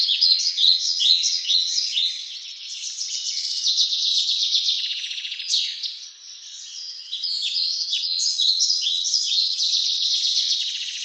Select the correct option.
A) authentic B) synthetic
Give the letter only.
B